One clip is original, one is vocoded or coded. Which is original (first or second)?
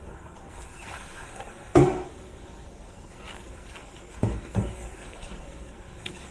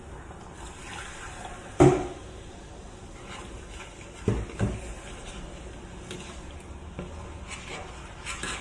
second